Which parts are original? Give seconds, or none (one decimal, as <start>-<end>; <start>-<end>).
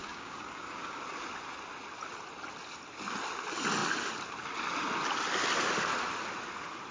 1.0-6.9